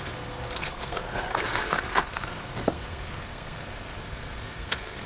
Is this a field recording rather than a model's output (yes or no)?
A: no